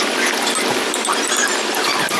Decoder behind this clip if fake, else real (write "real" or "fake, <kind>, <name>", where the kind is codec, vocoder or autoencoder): real